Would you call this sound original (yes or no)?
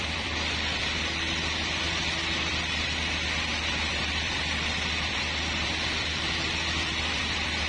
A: no